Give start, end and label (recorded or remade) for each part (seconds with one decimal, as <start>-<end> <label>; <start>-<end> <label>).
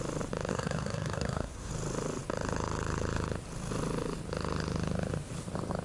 0.0-0.5 recorded; 0.5-1.7 remade; 1.7-5.8 recorded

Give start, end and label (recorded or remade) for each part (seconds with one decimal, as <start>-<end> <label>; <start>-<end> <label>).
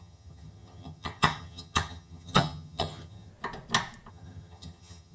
0.0-3.3 remade; 3.3-4.1 recorded; 4.1-5.1 remade